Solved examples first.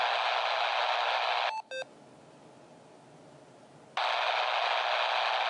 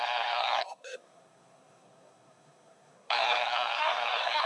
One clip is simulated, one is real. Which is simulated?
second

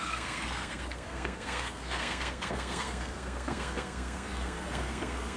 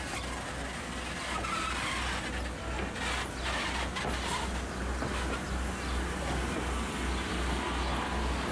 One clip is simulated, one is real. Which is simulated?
first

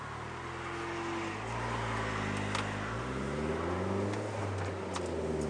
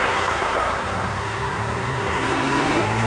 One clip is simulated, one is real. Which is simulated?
second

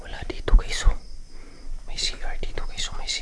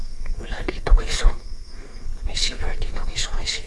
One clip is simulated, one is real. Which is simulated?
second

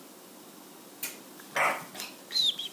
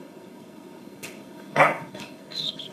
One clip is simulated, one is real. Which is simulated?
second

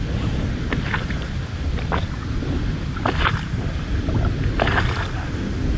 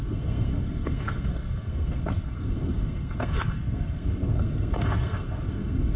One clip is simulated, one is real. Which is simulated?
second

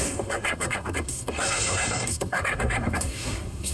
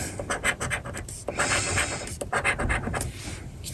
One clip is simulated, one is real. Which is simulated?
first